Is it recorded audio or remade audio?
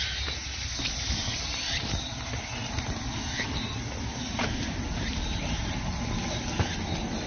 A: recorded